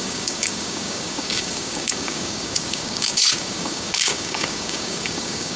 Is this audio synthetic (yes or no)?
yes